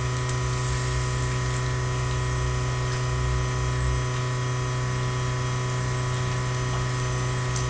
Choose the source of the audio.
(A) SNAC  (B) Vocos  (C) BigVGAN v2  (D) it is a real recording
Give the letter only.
D